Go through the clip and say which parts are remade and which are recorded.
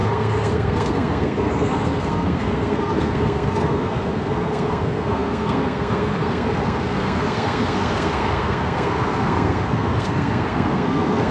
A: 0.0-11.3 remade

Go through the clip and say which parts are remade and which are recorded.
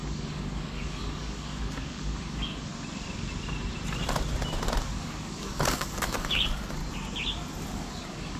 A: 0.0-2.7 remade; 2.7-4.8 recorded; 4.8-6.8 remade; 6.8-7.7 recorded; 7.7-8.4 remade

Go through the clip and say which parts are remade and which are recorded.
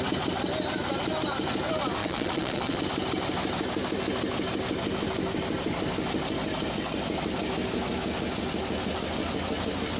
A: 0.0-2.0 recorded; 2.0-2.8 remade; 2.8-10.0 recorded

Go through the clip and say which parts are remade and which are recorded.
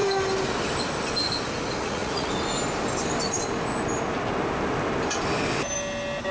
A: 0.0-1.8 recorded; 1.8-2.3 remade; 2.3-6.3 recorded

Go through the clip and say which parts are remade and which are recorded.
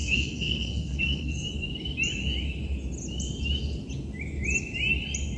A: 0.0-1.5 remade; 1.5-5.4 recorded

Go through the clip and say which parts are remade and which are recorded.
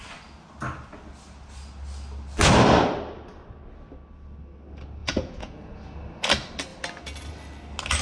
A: 0.0-5.0 recorded; 5.0-5.8 remade; 5.8-8.0 recorded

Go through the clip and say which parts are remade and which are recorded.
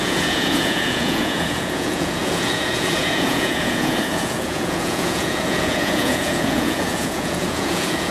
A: 0.0-8.1 remade